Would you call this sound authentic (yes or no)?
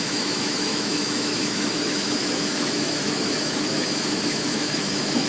no